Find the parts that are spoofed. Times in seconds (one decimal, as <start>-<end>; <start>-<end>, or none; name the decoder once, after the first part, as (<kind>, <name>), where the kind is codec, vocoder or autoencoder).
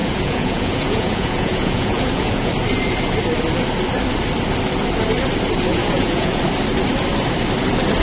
0.0-2.5 (vocoder, Vocos); 5.7-6.4